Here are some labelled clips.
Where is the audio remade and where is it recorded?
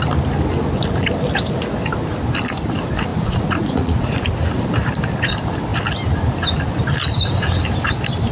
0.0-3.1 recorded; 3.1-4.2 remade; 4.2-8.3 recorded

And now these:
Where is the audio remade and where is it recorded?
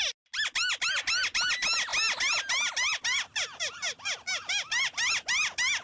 0.0-5.8 recorded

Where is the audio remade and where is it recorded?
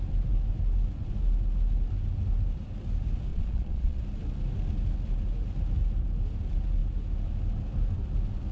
0.0-3.3 recorded; 3.3-4.0 remade; 4.0-8.5 recorded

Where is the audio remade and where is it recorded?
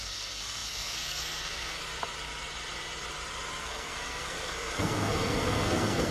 0.0-1.8 remade; 1.8-3.6 recorded; 3.6-6.1 remade